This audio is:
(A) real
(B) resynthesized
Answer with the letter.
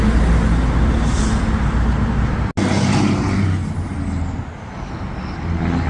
A